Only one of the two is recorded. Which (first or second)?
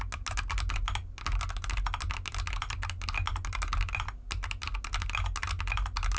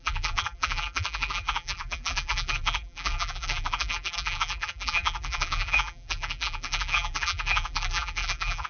first